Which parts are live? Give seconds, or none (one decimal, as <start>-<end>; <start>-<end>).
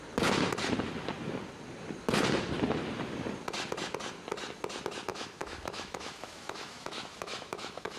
0.0-5.1